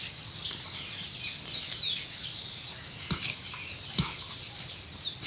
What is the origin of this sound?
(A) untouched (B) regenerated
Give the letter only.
A